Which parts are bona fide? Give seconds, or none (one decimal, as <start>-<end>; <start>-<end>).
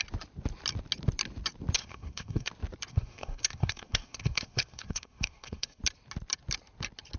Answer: 0.0-1.8; 2.5-2.9; 5.8-7.2